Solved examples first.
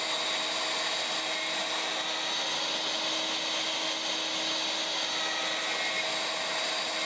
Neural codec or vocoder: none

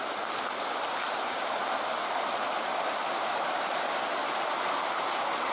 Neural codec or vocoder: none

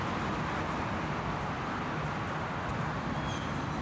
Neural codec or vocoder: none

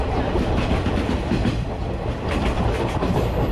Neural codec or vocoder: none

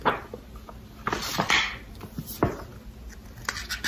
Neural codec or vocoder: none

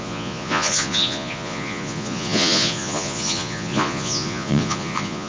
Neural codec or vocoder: vocoder, Vocos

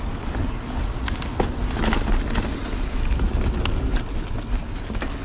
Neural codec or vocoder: none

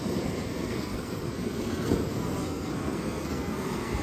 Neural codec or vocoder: codec, SNAC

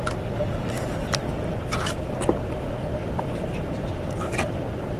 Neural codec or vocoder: vocoder, BigVGAN v2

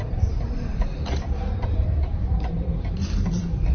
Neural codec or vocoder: vocoder, BigVGAN v2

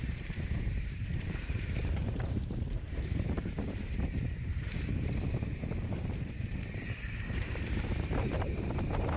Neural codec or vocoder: vocoder, BigVGAN v2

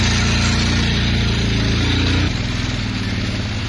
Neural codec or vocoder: none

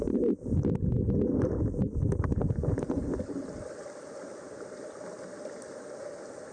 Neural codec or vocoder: none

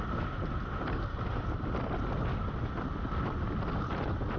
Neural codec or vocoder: none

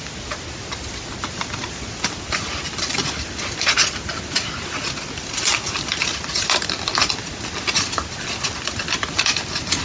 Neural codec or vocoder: none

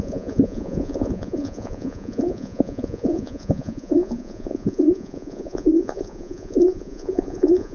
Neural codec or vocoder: vocoder, Vocos